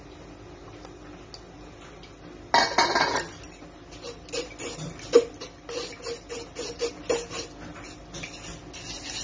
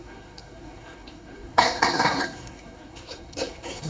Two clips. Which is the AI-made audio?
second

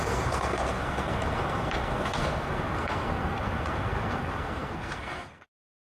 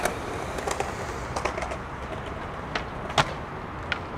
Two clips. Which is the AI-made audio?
first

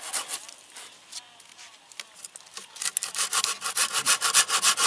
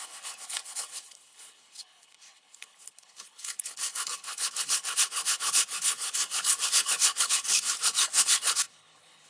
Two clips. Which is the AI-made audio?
second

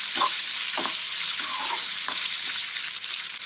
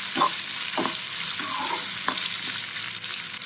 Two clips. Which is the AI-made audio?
first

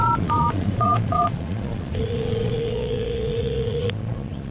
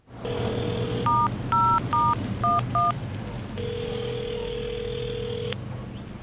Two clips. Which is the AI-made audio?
first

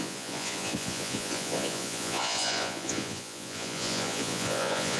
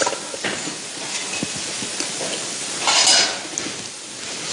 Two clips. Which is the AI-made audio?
first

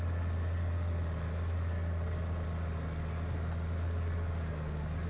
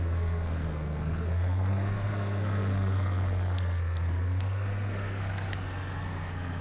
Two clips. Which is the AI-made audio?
second